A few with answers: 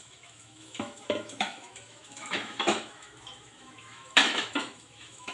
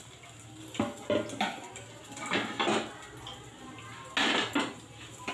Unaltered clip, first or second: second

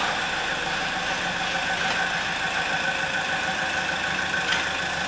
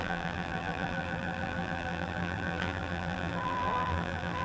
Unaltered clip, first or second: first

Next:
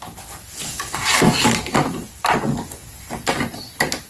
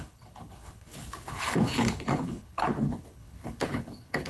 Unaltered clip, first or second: first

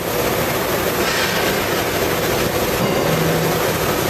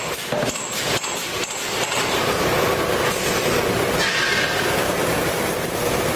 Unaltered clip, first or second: first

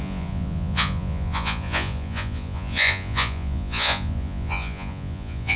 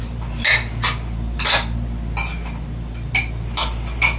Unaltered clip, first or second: second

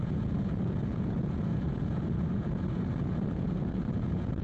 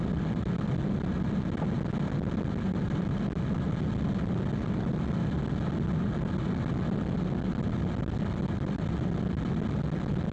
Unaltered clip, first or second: second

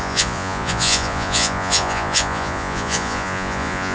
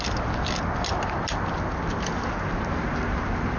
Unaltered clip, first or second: second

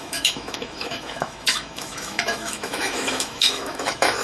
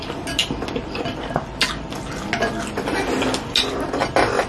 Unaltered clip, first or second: second